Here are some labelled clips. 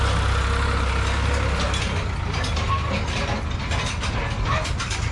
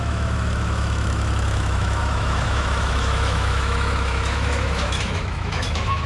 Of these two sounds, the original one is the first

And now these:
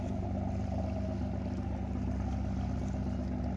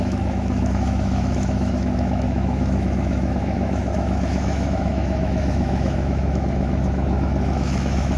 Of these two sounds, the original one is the first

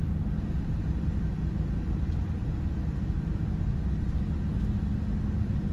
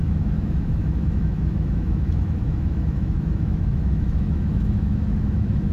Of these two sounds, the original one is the first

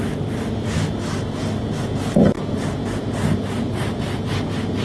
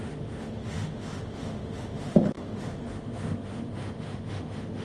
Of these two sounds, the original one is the first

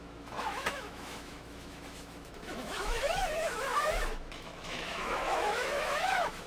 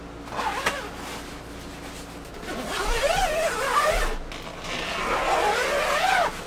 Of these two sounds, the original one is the second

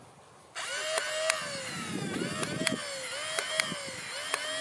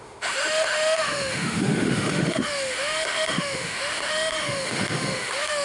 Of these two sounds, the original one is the first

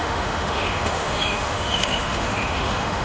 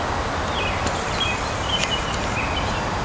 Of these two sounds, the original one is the second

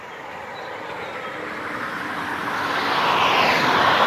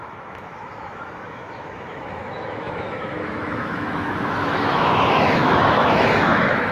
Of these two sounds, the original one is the first